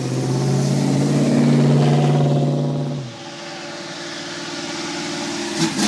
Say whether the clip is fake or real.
real